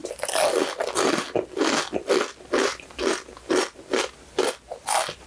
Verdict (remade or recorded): recorded